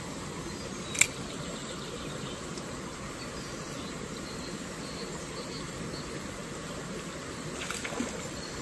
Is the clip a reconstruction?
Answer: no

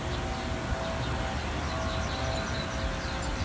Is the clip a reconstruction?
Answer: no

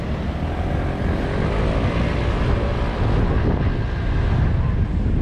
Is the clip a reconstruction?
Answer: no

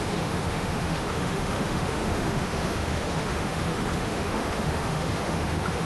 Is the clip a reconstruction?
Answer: yes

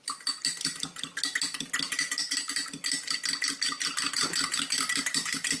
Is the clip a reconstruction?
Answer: no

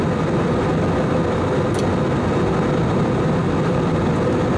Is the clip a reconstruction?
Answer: no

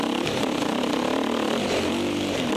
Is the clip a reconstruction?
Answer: no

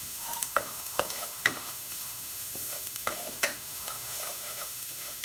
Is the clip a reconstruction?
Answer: yes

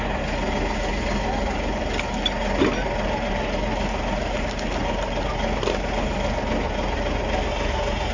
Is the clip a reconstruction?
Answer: no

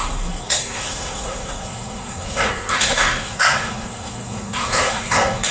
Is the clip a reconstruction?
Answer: yes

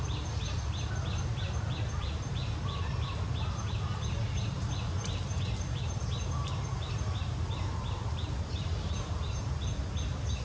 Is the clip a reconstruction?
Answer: no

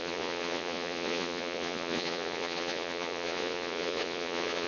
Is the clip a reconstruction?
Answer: yes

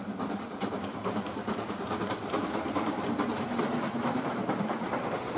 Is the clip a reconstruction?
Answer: yes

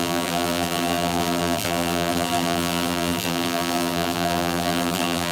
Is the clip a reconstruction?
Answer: yes